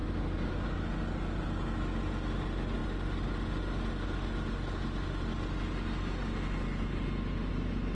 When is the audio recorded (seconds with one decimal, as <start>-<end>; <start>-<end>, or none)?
0.0-7.9

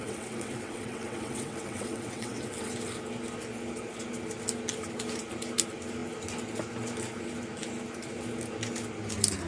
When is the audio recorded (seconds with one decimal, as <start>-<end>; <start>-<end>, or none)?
2.7-9.5

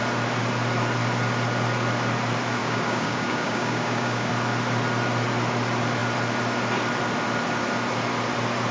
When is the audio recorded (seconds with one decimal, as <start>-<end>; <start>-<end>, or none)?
0.0-2.6; 4.3-8.7

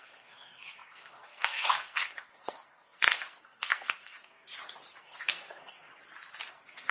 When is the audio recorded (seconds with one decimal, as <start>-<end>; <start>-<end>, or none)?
4.5-5.0; 5.9-6.5

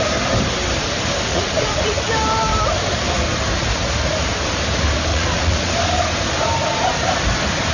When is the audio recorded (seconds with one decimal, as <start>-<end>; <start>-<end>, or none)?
0.0-1.3; 1.9-5.1; 5.7-7.7

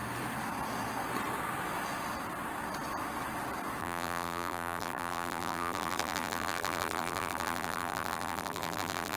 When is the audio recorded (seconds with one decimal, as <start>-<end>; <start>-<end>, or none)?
0.0-3.8

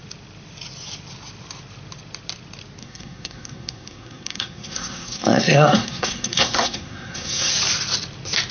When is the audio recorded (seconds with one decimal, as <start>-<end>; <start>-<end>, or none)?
0.0-2.8; 7.5-8.5

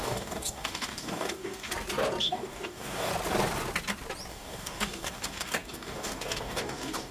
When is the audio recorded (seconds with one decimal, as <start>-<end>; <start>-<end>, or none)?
1.7-2.2; 3.1-4.3